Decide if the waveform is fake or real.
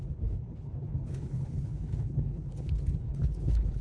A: fake